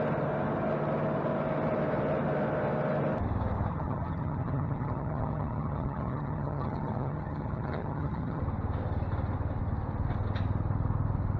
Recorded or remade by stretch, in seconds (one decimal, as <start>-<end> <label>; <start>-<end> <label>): 0.0-3.7 recorded; 3.7-8.4 remade; 8.4-11.4 recorded